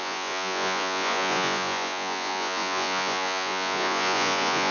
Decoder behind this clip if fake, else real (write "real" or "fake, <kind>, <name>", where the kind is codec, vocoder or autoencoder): fake, vocoder, Vocos